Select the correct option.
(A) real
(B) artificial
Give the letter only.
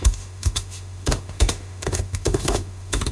B